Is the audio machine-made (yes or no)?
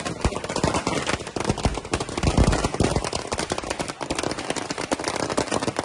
no